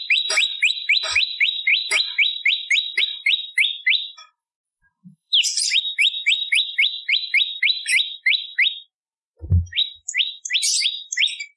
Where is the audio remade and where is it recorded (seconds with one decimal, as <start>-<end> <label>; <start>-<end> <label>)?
0.0-1.7 remade; 1.7-3.0 recorded; 3.0-8.5 remade; 8.5-9.4 recorded; 9.4-11.6 remade